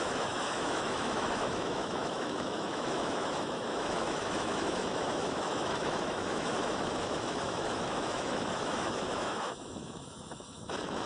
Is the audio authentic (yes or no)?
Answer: no